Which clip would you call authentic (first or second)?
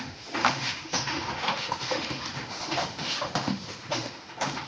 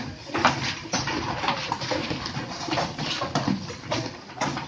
second